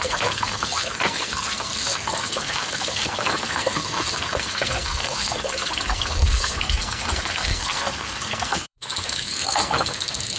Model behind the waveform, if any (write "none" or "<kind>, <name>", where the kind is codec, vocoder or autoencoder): codec, SNAC